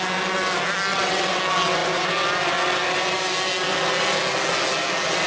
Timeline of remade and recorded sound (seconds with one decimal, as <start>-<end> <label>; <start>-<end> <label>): 0.0-0.9 recorded; 0.9-1.4 remade; 1.4-5.3 recorded